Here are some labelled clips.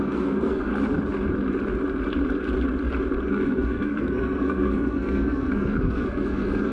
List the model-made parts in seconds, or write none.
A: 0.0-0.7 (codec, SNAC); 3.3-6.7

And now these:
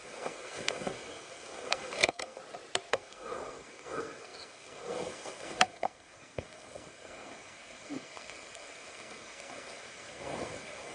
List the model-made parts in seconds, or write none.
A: 0.0-2.4 (codec, SNAC); 2.9-10.9

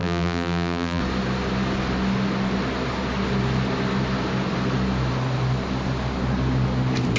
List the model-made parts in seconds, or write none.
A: 0.0-1.0 (vocoder, BigVGAN v2)

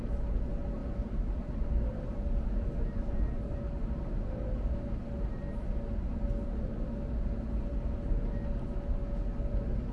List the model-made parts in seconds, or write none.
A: none

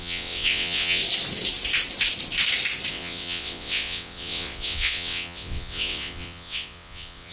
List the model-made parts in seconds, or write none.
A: 0.0-1.0 (vocoder, WaveNeXt); 2.9-7.3

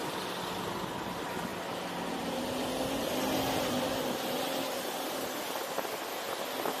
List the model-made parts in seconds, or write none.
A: none

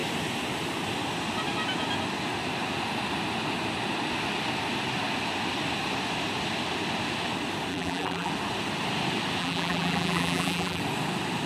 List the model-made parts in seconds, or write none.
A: 7.7-8.3 (vocoder, BigVGAN v2); 9.4-10.8

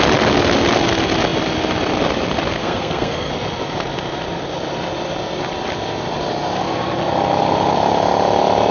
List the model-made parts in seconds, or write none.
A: 2.6-3.3 (codec, SNAC)